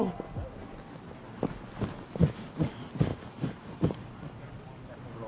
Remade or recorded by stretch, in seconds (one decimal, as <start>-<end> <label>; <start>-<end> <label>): 0.0-3.1 recorded; 3.1-4.4 remade; 4.4-5.3 recorded